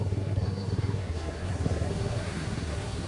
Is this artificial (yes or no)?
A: yes